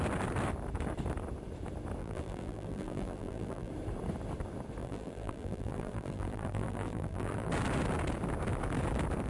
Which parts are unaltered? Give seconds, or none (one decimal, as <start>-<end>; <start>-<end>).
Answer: 0.0-2.0; 3.7-4.8; 7.5-9.3